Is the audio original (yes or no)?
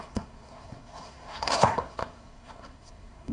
no